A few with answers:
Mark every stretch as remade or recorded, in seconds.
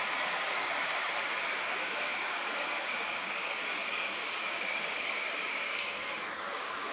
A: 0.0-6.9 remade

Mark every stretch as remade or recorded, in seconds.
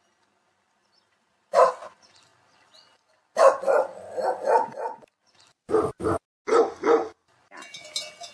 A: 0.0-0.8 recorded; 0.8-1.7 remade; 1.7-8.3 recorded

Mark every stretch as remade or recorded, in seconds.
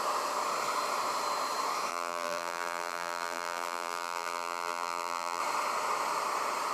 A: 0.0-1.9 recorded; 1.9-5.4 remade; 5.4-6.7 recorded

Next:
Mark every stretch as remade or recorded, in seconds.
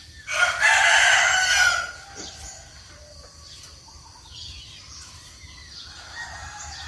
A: 0.0-5.6 remade; 5.6-6.3 recorded; 6.3-6.9 remade